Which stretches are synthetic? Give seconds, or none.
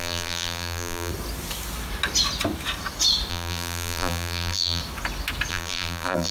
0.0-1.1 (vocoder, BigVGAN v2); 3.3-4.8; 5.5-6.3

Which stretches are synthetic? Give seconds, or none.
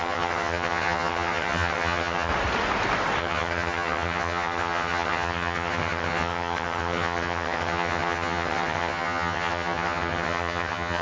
0.0-2.3 (vocoder, HiFi-GAN); 3.2-11.0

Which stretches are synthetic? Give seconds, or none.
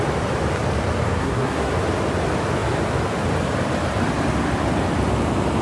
1.0-1.7 (codec, SNAC)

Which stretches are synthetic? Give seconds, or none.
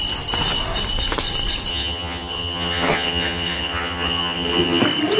1.7-4.8 (vocoder, HiFi-GAN)